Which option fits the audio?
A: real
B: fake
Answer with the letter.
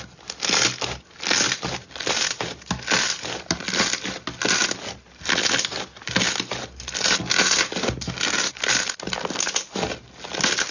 A